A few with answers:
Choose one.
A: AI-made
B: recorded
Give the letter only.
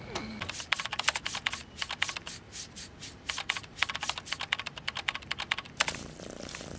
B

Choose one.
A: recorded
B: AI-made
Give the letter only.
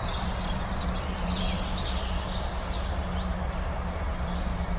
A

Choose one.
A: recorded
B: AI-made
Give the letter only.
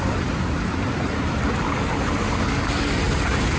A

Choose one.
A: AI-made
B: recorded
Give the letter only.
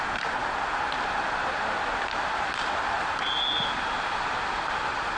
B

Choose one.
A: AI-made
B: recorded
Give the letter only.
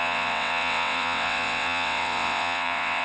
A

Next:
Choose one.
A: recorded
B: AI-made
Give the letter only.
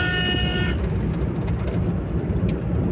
A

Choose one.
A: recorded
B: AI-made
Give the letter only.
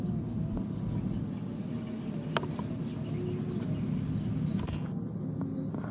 A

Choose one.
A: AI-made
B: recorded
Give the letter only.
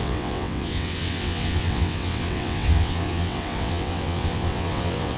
A